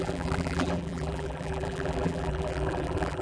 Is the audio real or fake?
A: fake